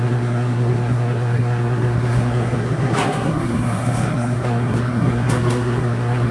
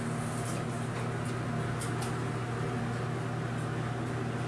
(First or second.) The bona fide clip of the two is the second